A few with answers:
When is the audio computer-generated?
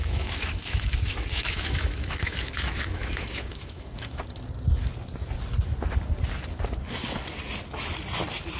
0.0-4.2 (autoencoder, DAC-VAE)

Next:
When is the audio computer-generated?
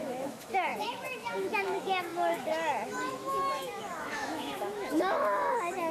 0.0-5.9 (autoencoder, DAC-VAE)